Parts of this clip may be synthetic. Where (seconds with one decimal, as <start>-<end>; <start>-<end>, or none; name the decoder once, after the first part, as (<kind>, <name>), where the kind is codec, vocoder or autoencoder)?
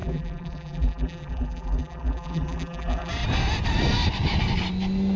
0.0-3.1 (vocoder, BigVGAN v2)